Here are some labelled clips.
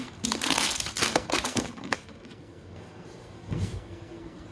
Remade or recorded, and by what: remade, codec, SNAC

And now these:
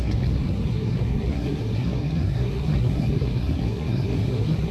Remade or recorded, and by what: remade, codec, SNAC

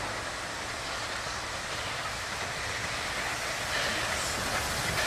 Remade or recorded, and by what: recorded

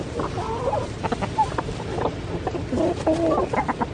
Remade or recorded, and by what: recorded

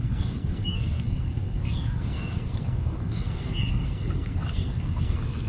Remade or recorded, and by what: remade, codec, SNAC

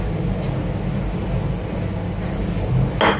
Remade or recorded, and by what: recorded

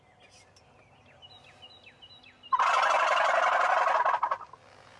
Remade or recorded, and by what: recorded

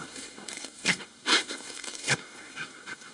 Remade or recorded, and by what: remade, codec, SNAC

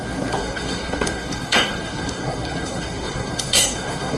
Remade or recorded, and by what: remade, codec, SNAC